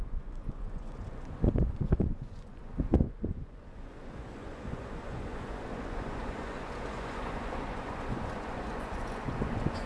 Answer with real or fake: fake